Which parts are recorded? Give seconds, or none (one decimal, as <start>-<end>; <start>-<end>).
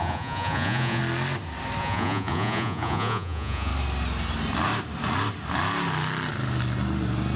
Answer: 1.0-1.8; 3.7-7.4